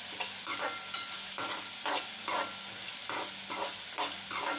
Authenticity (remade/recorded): recorded